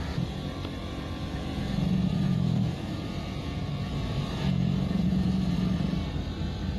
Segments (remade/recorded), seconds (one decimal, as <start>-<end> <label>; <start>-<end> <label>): 0.0-1.5 recorded; 1.5-5.5 remade; 5.5-6.8 recorded